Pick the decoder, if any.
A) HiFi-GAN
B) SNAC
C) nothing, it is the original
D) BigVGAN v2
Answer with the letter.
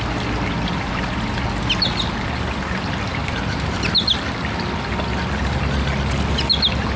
C